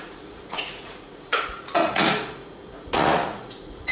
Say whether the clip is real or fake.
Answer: fake